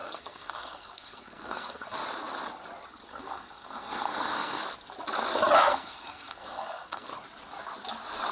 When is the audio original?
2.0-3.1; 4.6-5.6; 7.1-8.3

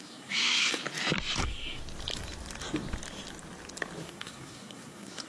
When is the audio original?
0.8-1.4; 1.8-4.0

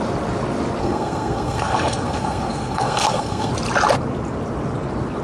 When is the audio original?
0.0-0.8; 3.5-5.2

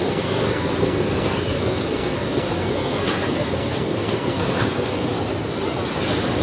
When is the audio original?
5.0-6.4

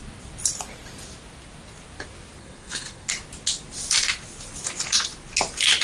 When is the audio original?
0.0-2.4; 3.1-5.8

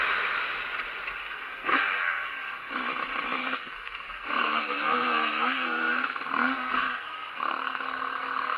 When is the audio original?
0.0-1.2; 2.7-3.4

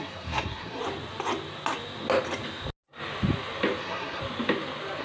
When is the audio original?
0.8-3.8; 4.2-5.0

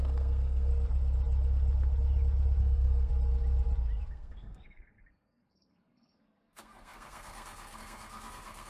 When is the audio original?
0.7-2.6; 3.1-4.1